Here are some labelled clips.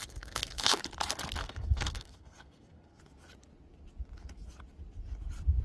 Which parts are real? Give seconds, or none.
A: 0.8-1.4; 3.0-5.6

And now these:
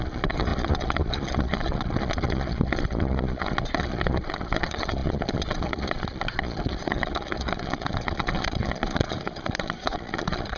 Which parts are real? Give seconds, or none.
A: none

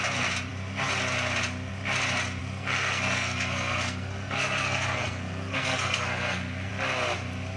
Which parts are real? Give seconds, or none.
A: 0.0-2.4; 6.7-7.6